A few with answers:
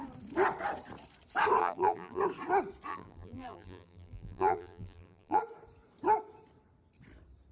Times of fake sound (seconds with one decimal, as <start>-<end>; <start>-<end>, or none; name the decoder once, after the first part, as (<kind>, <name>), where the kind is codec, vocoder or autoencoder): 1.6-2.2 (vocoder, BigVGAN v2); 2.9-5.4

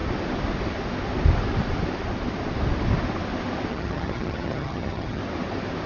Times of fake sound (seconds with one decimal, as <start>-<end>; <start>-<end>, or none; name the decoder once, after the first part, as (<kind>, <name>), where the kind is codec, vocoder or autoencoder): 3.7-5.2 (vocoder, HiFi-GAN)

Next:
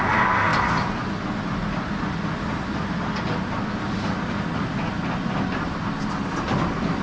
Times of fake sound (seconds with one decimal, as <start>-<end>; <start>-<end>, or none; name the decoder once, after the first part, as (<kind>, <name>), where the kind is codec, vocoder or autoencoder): none